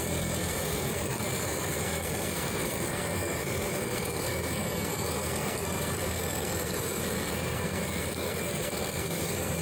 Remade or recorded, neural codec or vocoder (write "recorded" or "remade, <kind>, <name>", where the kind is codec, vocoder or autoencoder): remade, codec, SNAC